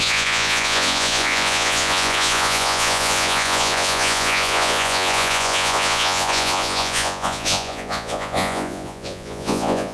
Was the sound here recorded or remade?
remade